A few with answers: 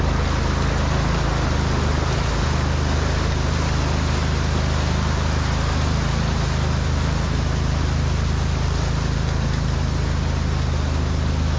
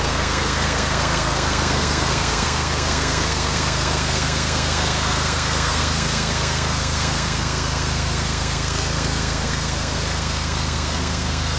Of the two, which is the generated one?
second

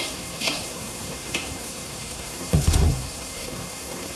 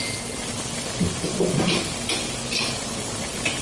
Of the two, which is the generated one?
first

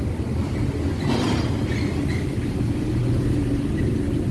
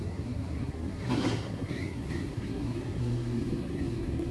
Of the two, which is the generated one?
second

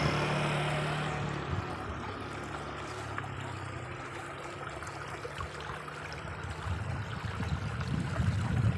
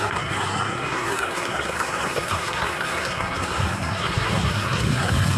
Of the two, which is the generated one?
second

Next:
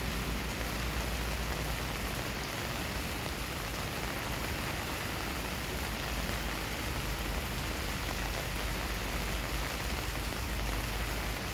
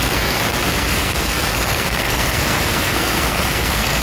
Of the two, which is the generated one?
second